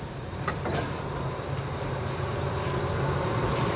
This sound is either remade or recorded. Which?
recorded